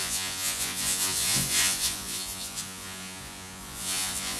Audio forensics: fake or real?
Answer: fake